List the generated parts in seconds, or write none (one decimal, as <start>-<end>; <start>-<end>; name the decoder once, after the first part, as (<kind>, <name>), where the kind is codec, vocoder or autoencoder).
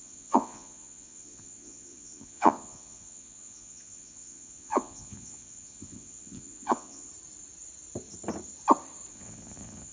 0.0-7.1 (vocoder, Vocos); 9.1-9.9